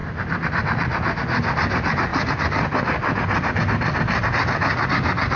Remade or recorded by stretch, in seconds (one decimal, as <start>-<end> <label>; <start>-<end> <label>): 0.0-5.4 recorded